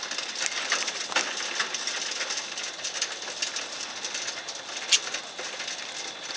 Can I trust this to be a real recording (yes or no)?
yes